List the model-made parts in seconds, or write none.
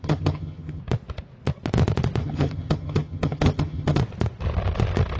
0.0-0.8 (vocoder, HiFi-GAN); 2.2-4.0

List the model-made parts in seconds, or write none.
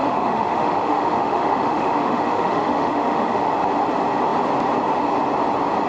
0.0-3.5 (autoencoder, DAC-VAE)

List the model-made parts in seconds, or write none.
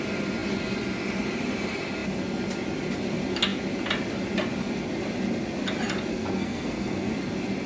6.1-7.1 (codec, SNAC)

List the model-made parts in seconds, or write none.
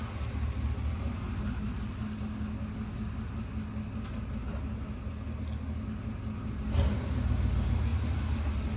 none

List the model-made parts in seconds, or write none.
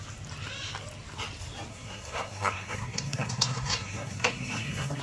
1.7-5.0 (codec, SNAC)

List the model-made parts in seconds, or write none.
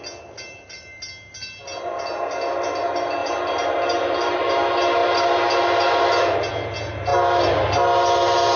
3.2-4.5 (vocoder, BigVGAN v2)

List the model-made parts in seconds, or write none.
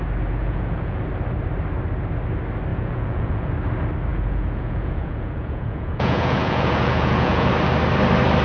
0.4-1.0 (vocoder, Vocos); 2.7-3.5; 4.1-7.5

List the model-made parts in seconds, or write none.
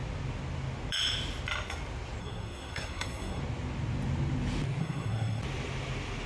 2.2-3.4 (codec, SNAC); 4.8-5.4